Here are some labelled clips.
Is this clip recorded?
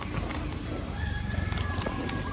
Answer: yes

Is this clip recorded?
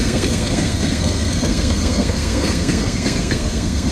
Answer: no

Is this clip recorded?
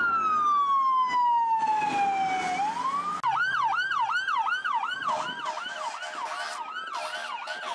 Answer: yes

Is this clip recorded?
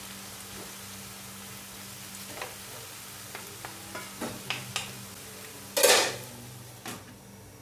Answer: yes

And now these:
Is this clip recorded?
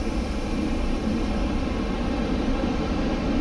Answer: yes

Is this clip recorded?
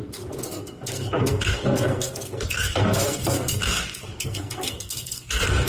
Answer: no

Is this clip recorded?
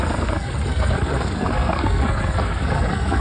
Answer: no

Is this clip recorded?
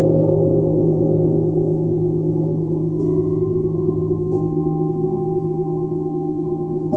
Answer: no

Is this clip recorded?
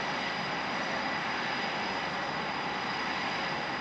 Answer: yes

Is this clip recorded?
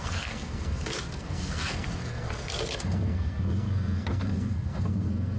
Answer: no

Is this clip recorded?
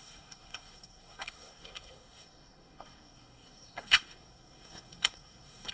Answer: no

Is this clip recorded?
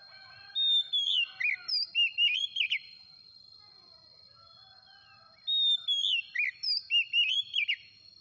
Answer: yes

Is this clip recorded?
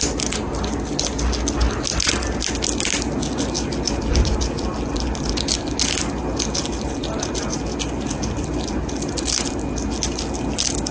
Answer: yes